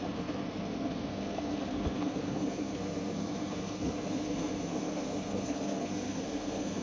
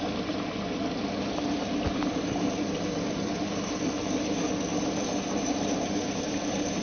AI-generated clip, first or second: first